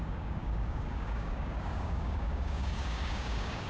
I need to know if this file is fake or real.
fake